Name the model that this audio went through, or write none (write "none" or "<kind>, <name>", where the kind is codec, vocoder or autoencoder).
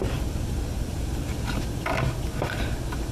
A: none